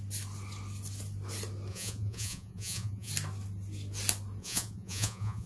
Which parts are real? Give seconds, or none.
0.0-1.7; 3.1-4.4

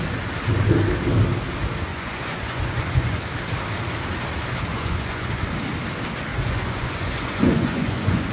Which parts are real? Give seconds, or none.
0.0-1.9; 3.2-4.7; 5.4-6.3

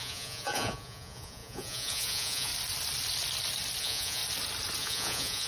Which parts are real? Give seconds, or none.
2.5-3.8; 4.2-4.8